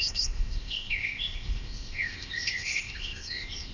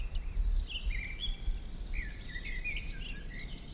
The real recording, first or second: second